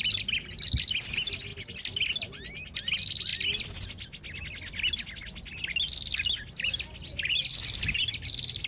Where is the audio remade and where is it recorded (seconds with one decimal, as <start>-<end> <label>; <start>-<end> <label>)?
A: 0.0-8.7 recorded